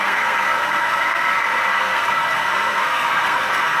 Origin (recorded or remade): remade